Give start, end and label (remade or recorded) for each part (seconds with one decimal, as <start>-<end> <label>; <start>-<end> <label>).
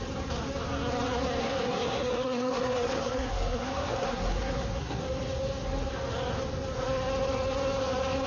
0.0-1.4 recorded; 1.4-5.0 remade; 5.0-8.3 recorded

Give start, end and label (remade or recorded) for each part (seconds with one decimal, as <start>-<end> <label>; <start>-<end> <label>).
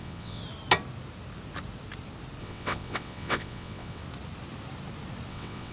0.0-0.4 remade; 0.4-2.4 recorded; 2.4-4.0 remade; 4.0-5.3 recorded; 5.3-5.7 remade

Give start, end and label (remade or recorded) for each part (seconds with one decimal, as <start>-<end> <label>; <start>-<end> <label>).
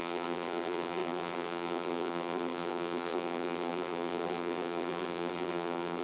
0.0-6.0 remade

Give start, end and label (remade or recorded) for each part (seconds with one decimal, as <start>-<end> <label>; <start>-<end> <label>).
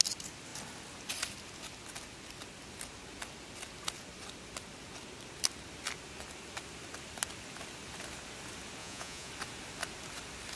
0.0-8.8 recorded; 8.8-9.3 remade; 9.3-10.6 recorded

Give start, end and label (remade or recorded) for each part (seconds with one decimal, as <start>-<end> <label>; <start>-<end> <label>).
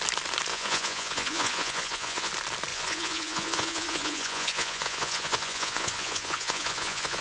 0.0-0.5 recorded; 0.5-2.3 remade; 2.3-2.7 recorded; 2.7-7.2 remade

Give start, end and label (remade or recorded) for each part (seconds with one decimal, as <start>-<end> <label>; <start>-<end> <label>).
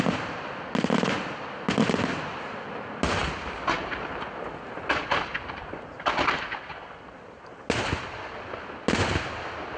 0.0-9.8 recorded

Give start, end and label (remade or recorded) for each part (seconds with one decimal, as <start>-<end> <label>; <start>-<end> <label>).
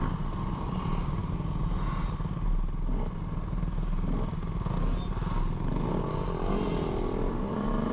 0.0-7.9 recorded